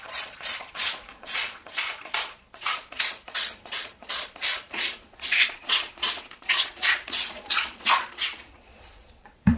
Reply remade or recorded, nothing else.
remade